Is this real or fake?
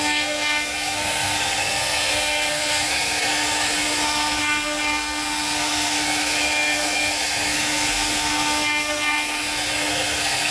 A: fake